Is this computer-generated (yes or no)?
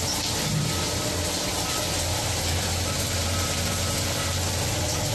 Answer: no